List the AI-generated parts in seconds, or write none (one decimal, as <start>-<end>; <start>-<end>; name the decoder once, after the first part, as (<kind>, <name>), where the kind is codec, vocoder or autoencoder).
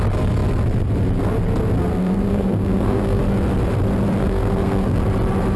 1.9-3.2 (codec, SNAC); 4.2-5.0